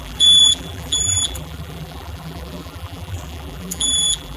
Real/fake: fake